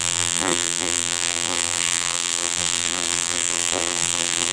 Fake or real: fake